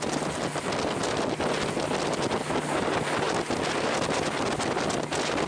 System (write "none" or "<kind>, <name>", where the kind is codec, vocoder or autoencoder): none